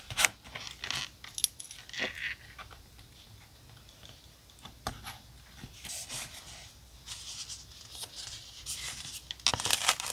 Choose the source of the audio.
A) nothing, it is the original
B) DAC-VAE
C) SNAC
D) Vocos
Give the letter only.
A